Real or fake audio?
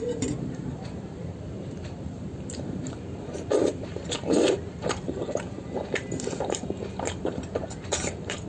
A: fake